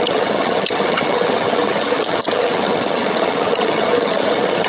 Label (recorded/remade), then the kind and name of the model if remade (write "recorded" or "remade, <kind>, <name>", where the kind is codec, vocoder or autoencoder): remade, vocoder, HiFi-GAN